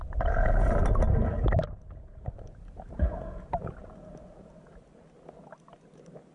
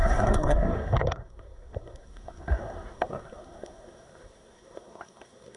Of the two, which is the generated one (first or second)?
second